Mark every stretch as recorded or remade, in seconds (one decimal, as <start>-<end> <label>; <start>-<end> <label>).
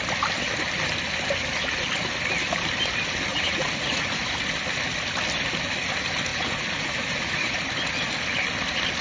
0.0-3.3 recorded; 3.3-4.2 remade; 4.2-6.3 recorded; 6.3-7.6 remade; 7.6-9.0 recorded